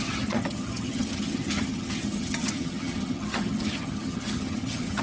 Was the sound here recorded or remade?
remade